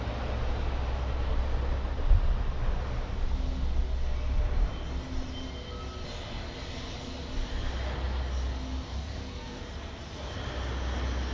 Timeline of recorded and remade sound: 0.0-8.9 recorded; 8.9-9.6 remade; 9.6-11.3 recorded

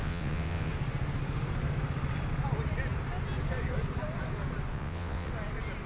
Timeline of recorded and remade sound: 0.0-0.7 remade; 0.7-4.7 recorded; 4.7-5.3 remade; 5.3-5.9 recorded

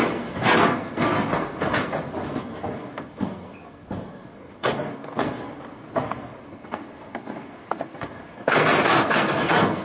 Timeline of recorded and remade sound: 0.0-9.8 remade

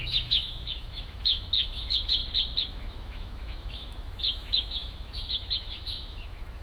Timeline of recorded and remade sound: 0.0-2.2 remade; 2.2-2.7 recorded; 2.7-6.6 remade